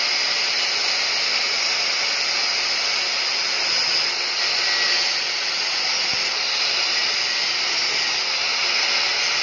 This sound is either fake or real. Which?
real